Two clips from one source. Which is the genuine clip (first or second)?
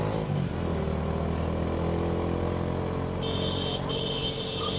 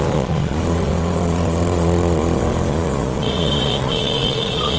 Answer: first